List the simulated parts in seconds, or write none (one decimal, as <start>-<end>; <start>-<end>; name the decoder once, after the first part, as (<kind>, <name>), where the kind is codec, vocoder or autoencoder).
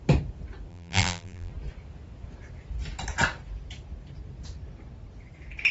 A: 0.7-1.5 (vocoder, BigVGAN v2)